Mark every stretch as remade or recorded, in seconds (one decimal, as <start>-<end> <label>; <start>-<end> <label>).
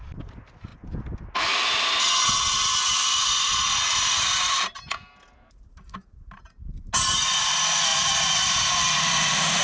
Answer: 0.0-9.6 recorded